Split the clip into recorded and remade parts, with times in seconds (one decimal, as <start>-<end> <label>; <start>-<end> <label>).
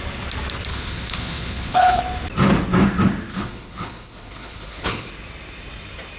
0.0-0.7 recorded; 0.7-2.0 remade; 2.0-3.3 recorded; 3.3-5.1 remade; 5.1-6.2 recorded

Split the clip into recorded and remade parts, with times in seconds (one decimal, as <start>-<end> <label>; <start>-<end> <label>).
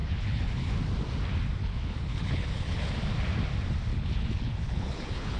0.0-0.7 remade; 0.7-1.6 recorded; 1.6-2.8 remade; 2.8-3.9 recorded; 3.9-5.4 remade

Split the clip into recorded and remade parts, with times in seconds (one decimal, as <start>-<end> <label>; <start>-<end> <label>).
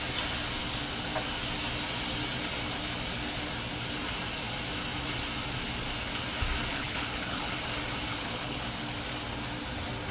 0.0-6.7 recorded; 6.7-7.5 remade; 7.5-8.1 recorded; 8.1-8.6 remade; 8.6-10.1 recorded